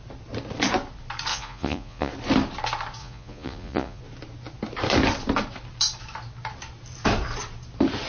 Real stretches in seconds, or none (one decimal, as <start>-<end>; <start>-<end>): 0.0-1.3; 2.1-3.0; 4.0-8.1